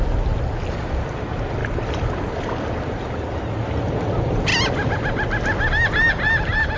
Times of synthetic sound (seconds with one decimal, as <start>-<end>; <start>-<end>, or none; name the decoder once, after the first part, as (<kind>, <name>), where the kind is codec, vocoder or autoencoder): none